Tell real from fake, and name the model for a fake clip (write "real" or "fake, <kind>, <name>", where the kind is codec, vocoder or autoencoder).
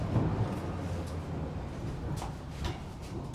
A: real